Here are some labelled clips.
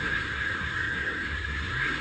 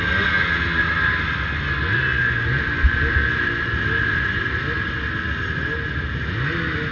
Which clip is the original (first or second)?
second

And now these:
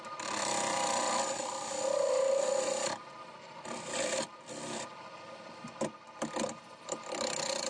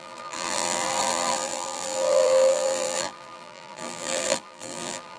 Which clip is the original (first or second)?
first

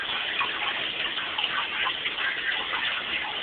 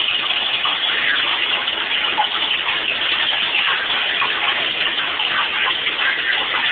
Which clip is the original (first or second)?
second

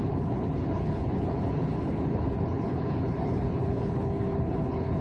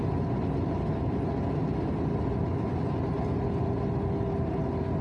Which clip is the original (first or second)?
second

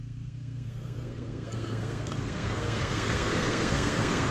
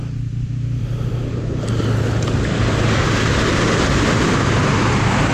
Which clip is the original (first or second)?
second